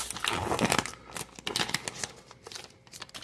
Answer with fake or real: real